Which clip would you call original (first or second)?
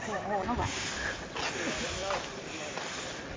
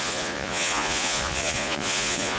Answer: first